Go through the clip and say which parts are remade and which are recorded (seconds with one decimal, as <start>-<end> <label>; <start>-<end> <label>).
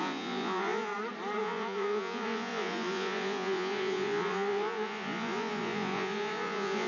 0.0-0.9 remade; 0.9-1.4 recorded; 1.4-6.9 remade